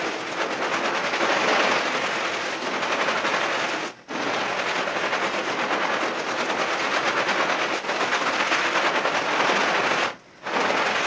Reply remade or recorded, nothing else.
recorded